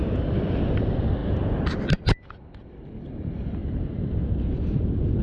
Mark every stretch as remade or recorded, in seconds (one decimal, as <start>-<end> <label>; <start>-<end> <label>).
0.0-3.6 recorded; 3.6-5.2 remade